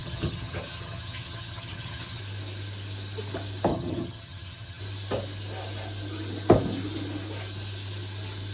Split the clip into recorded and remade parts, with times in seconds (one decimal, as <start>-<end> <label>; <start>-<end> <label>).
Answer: 0.0-2.2 remade; 2.2-3.7 recorded; 3.7-4.8 remade; 4.8-8.5 recorded